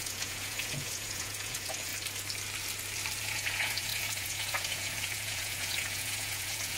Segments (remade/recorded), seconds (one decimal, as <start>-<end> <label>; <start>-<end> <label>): 0.0-1.9 remade; 1.9-3.2 recorded; 3.2-6.8 remade